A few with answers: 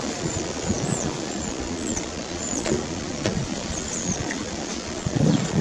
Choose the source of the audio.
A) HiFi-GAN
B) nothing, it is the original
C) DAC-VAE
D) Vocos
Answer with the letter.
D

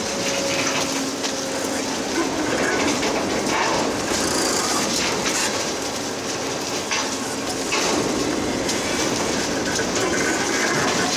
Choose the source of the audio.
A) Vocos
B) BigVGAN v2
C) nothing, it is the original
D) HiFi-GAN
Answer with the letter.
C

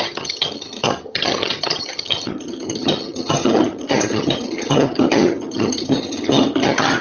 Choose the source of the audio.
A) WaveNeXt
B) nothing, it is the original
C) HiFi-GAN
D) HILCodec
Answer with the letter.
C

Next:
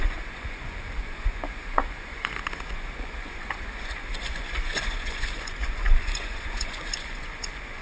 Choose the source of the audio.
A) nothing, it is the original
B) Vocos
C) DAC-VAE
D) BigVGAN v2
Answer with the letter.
B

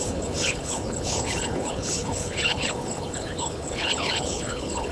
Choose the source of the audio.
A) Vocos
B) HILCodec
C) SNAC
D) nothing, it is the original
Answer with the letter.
B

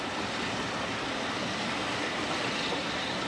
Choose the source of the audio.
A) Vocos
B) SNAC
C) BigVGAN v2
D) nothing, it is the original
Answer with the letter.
C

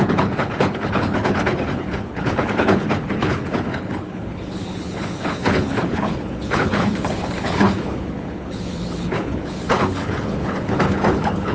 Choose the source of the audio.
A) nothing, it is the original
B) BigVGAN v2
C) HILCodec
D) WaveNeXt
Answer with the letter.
C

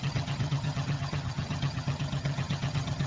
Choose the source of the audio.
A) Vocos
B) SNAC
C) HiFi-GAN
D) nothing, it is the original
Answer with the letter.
C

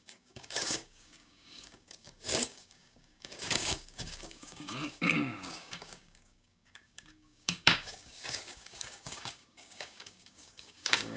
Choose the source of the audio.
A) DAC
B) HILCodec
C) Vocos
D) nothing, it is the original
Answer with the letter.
A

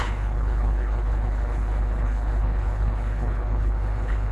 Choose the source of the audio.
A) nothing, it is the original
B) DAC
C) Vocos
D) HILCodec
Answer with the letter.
D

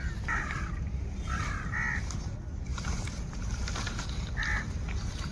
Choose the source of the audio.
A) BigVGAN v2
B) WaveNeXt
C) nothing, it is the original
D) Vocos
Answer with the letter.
C